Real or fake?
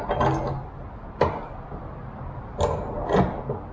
real